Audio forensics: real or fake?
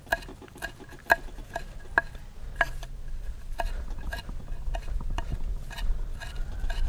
real